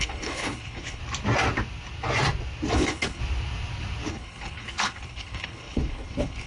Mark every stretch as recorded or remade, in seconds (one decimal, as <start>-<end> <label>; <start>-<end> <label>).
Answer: 0.0-1.0 remade; 1.0-2.7 recorded; 2.7-3.2 remade; 3.2-4.1 recorded; 4.1-6.5 remade